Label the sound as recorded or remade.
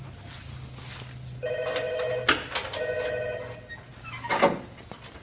recorded